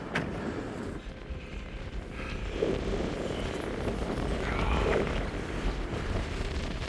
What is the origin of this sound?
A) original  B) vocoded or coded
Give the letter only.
A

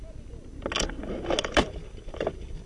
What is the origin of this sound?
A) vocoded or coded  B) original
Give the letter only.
B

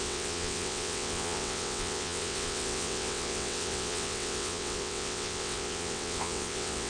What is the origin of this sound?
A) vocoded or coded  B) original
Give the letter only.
A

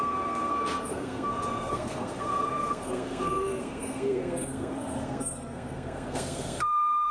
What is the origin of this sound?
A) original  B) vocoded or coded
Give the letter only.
B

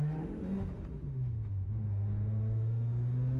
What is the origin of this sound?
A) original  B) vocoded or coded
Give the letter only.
B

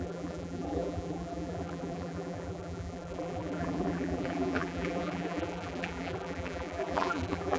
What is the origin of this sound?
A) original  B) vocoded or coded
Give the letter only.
B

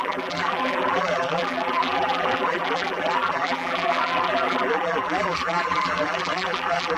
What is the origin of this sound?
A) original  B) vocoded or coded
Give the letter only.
B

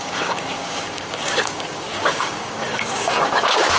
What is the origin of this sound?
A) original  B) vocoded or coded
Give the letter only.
B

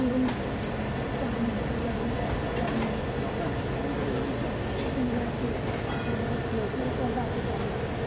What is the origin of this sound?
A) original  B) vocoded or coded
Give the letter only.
A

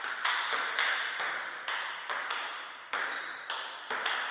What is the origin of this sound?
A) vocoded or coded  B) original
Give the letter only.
B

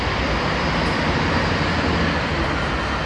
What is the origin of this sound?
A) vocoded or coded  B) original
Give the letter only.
B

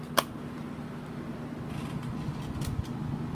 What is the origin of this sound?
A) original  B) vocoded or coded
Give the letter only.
A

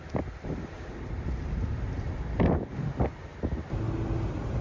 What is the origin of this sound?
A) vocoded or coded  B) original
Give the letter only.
B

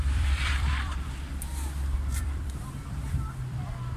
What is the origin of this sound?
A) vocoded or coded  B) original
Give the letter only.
A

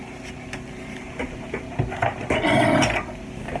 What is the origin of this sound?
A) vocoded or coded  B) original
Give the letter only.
B